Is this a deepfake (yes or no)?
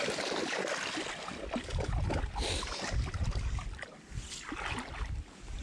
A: yes